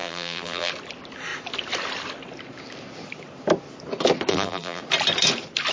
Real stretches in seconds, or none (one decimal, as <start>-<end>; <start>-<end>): 0.7-4.3; 4.8-5.7